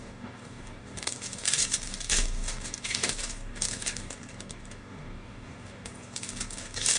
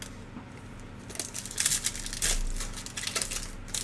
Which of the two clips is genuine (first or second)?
second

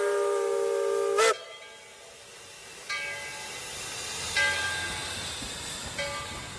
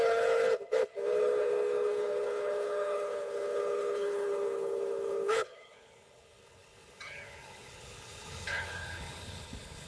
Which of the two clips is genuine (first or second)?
first